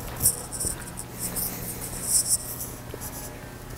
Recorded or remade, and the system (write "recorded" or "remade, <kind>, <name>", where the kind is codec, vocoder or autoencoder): recorded